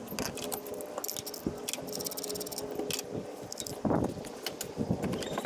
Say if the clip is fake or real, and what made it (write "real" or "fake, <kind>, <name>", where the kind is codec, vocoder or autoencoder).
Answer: real